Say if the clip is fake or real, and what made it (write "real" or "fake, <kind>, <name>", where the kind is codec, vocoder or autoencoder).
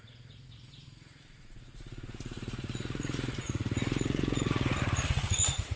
fake, vocoder, Vocos